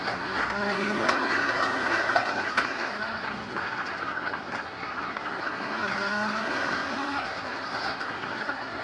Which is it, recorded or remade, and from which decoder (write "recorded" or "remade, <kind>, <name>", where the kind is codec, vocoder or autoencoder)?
remade, codec, SNAC